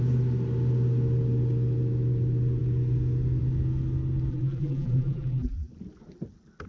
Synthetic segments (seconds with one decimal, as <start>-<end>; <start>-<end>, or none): 4.3-5.7

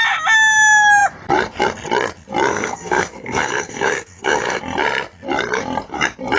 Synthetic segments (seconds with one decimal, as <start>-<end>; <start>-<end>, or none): 2.5-4.6

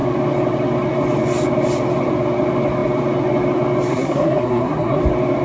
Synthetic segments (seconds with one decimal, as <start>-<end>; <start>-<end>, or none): 3.9-5.0

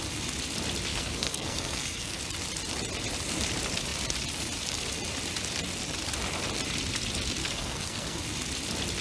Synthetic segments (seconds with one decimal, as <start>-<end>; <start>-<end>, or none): 0.9-2.2; 7.4-8.2

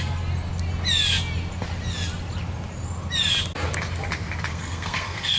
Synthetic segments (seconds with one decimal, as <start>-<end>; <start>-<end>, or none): 4.5-5.4